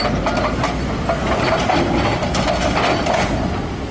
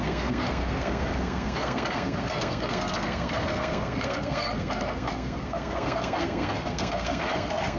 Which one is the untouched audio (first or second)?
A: first